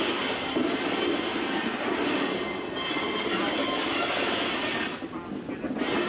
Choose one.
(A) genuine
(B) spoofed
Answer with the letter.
A